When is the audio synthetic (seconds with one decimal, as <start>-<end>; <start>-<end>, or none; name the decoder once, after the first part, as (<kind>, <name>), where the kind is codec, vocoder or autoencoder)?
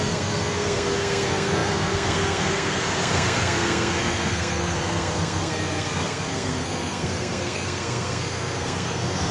0.0-9.3 (codec, SNAC)